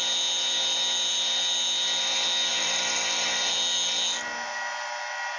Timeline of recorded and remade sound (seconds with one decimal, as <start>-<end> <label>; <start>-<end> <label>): 0.0-5.4 recorded